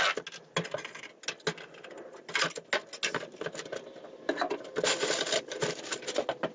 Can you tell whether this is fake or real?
real